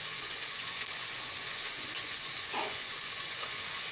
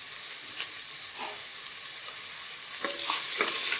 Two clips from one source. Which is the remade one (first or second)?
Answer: first